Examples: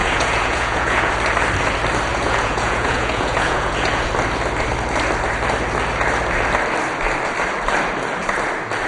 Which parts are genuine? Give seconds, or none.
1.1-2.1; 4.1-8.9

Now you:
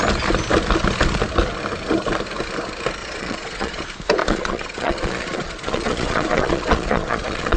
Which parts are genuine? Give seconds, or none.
0.0-3.0; 3.8-4.2